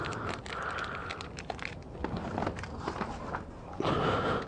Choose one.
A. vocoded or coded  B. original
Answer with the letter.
B